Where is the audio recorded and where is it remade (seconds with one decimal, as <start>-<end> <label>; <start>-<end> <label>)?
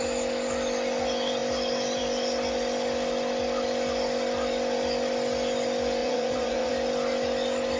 0.0-6.0 recorded; 6.0-6.7 remade; 6.7-7.8 recorded